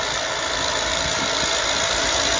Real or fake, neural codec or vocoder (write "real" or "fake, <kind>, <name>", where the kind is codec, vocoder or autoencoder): real